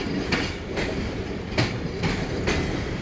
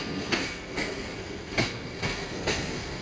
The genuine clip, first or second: first